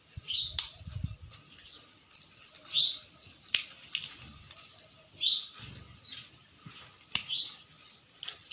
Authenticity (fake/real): fake